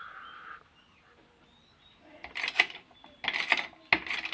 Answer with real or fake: real